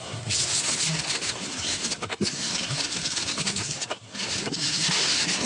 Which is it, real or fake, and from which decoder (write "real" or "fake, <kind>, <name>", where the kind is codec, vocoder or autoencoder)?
fake, codec, SNAC